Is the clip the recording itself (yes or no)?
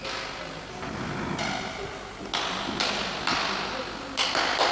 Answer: yes